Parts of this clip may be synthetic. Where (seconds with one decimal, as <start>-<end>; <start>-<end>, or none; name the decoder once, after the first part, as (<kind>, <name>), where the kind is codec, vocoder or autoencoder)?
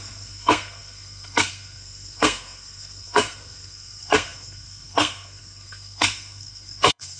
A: 0.0-7.2 (codec, SNAC)